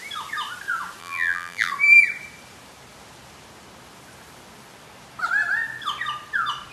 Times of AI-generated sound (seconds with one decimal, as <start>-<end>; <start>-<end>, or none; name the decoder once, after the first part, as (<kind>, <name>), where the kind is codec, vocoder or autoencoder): 1.0-1.7 (vocoder, BigVGAN v2)